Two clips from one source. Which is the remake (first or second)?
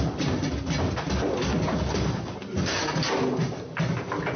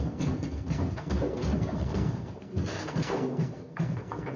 second